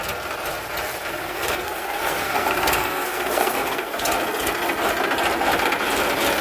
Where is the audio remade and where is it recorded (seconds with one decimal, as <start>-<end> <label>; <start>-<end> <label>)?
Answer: 0.0-1.1 recorded; 1.1-4.0 remade; 4.0-6.4 recorded